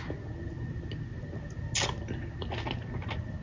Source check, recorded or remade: recorded